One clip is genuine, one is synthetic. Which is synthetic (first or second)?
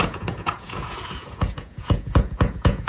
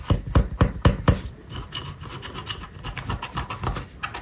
first